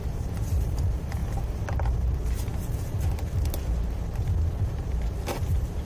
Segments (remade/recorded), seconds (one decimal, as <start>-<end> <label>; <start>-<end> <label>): 0.0-1.2 remade; 1.2-4.7 recorded; 4.7-5.9 remade